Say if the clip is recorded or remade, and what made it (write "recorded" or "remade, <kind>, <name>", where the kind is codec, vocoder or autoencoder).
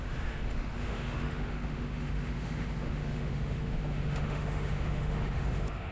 remade, autoencoder, DAC-VAE